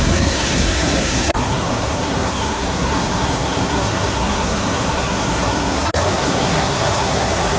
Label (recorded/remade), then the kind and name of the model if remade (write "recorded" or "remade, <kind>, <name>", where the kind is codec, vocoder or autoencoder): remade, codec, SNAC